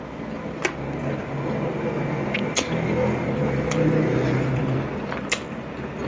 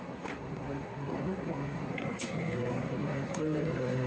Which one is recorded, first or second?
first